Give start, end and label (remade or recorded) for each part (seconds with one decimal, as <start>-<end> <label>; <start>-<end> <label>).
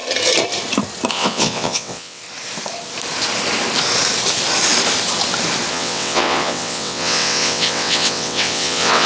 0.0-1.1 recorded; 1.1-2.2 remade; 2.2-5.7 recorded; 5.7-9.1 remade